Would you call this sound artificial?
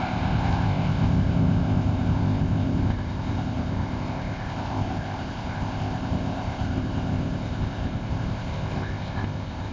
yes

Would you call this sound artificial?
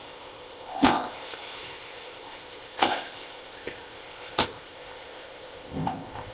yes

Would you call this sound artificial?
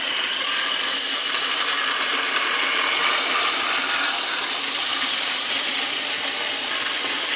no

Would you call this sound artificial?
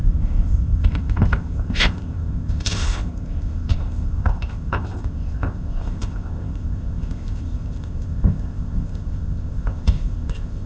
yes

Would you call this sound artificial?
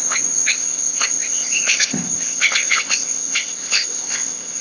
yes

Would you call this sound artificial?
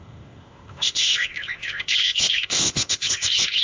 yes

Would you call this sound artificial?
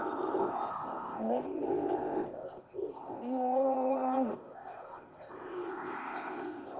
yes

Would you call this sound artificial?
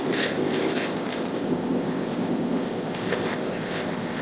yes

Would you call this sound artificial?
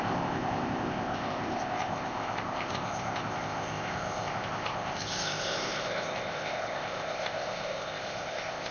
yes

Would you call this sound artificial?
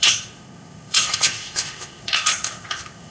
yes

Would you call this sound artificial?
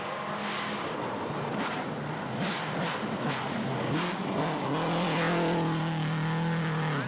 no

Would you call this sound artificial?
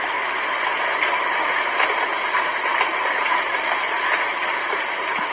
no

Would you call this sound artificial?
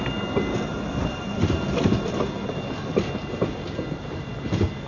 no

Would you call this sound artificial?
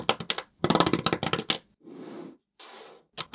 no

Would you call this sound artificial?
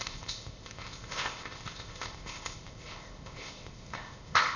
yes